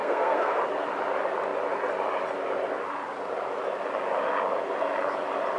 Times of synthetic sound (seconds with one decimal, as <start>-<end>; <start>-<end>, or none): 0.0-0.6